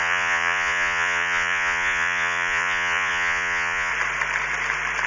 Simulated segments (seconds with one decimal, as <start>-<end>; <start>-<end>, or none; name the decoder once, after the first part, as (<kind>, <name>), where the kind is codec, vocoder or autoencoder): 0.0-3.9 (vocoder, Vocos)